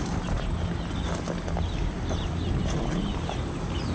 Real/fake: real